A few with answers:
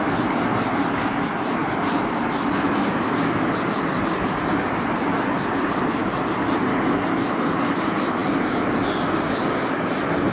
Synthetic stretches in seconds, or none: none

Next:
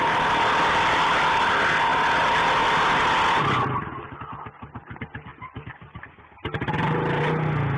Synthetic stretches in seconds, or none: none

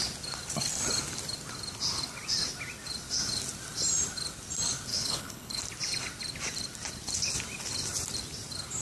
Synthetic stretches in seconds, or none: 4.9-5.6 (codec, HILCodec)

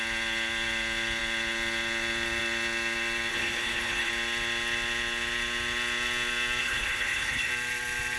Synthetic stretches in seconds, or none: 3.3-4.1 (codec, HILCodec); 6.6-7.5

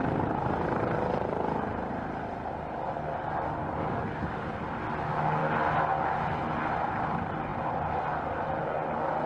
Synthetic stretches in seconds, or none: none